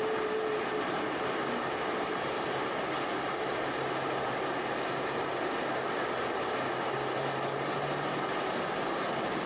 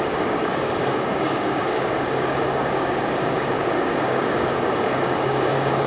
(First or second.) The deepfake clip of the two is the second